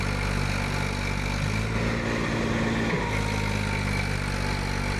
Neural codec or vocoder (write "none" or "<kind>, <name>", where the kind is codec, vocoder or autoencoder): none